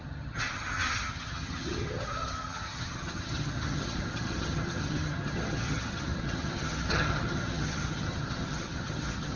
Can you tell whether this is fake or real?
fake